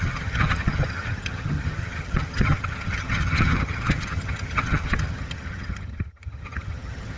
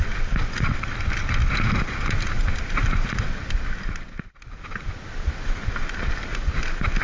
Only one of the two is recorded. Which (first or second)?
second